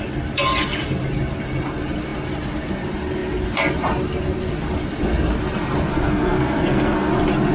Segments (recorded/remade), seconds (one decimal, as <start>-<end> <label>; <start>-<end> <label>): 0.0-5.9 recorded; 5.9-7.1 remade; 7.1-7.5 recorded